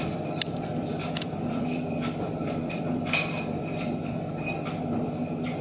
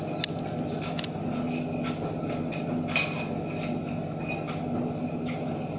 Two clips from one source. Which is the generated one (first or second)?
first